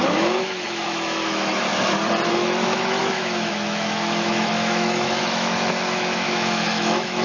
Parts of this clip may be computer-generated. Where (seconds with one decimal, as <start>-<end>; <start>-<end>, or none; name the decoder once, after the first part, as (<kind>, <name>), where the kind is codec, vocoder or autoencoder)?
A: 0.0-1.7 (autoencoder, DAC-VAE); 2.3-7.2